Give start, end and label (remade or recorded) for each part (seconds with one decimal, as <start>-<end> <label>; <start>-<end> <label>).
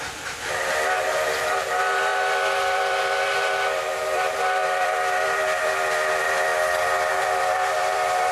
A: 0.0-6.5 remade; 6.5-7.2 recorded; 7.2-8.3 remade